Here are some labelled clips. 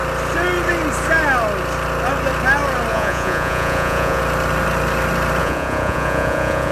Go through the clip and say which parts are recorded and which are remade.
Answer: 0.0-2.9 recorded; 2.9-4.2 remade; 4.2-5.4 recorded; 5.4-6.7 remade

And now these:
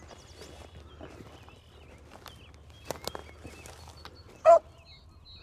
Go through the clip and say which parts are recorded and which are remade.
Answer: 0.0-5.4 recorded

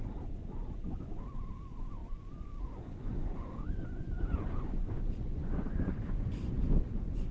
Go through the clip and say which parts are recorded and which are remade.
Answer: 0.0-7.3 remade

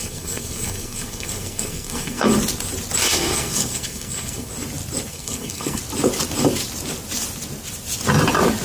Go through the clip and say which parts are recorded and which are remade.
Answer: 0.0-2.3 remade; 2.3-3.0 recorded; 3.0-4.5 remade; 4.5-5.1 recorded; 5.1-5.8 remade; 5.8-8.6 recorded

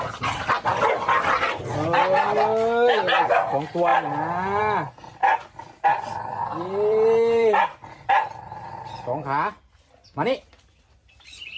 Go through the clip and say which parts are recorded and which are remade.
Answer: 0.0-0.7 recorded; 0.7-1.6 remade; 1.6-5.2 recorded; 5.2-8.8 remade; 8.8-11.6 recorded